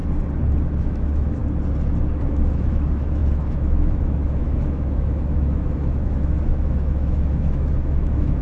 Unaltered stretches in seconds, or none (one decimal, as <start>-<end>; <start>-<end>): 0.0-0.8; 1.4-2.3

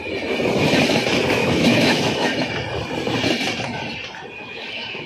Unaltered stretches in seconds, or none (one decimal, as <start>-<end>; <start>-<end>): 0.0-1.4; 2.5-4.4

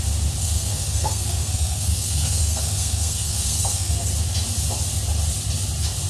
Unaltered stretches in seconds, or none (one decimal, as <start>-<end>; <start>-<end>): 0.0-0.4; 4.1-6.1

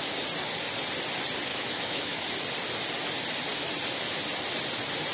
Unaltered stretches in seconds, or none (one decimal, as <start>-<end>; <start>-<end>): 0.0-1.5; 2.2-5.1

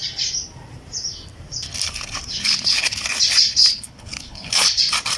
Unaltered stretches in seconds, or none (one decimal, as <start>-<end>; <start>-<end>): 0.0-2.3; 3.0-3.6; 4.8-5.2

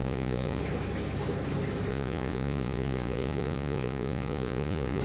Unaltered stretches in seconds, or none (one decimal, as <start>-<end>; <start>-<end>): 0.6-1.9

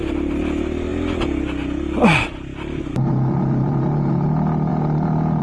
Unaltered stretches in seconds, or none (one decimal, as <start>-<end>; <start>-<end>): 0.0-5.4

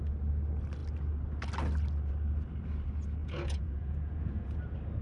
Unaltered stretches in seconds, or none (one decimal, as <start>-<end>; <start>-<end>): 0.0-3.2; 4.6-5.0